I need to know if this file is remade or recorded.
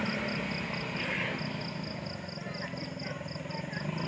recorded